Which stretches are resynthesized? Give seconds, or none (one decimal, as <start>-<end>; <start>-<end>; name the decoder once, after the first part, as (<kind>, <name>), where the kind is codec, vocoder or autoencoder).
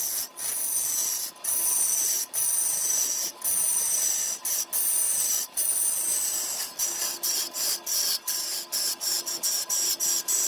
none